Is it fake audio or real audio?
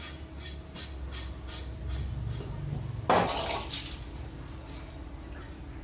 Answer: real